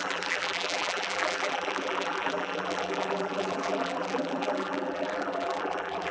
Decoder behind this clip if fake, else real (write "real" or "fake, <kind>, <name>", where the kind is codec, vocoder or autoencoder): fake, vocoder, BigVGAN v2